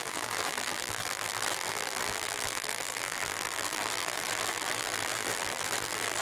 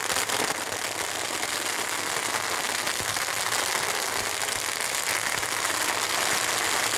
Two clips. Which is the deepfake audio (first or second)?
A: first